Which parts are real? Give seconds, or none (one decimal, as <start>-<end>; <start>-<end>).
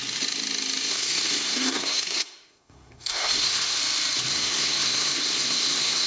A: 0.0-0.9; 3.8-4.3